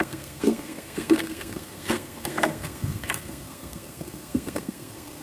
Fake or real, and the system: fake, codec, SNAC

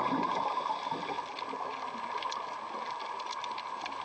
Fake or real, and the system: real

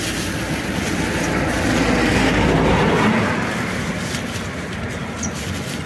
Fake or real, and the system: real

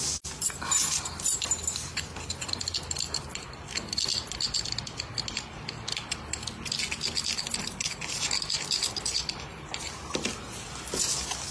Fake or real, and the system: real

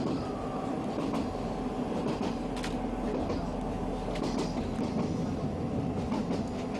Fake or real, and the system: real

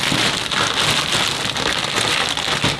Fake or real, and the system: real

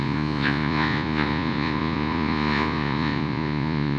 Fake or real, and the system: fake, vocoder, Vocos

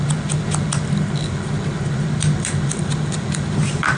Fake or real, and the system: real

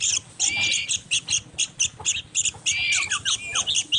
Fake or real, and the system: real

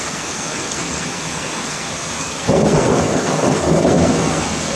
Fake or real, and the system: fake, codec, SNAC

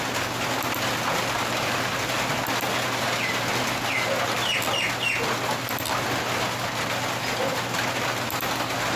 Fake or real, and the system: real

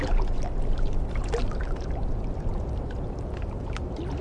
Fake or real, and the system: real